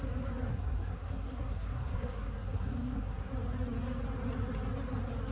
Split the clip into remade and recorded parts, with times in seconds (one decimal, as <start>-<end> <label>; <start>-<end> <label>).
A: 0.0-0.5 recorded; 0.5-3.3 remade; 3.3-5.3 recorded